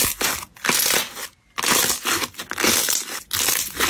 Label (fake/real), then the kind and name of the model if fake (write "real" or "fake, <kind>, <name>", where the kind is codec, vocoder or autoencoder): real